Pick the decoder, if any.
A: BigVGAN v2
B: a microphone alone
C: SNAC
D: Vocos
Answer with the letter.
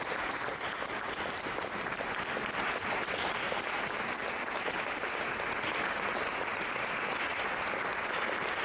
B